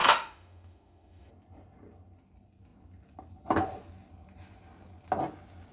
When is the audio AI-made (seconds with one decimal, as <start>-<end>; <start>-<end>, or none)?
0.0-1.3

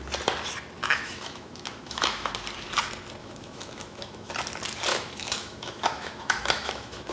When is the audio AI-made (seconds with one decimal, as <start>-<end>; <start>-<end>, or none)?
0.8-2.3; 3.2-4.3; 4.9-7.1

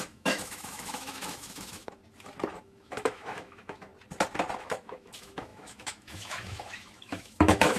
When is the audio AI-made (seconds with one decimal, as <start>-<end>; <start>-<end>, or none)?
0.0-2.0; 2.6-3.9; 4.6-7.8